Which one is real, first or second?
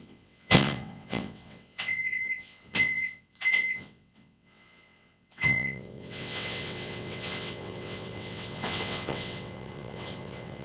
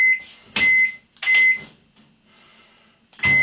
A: second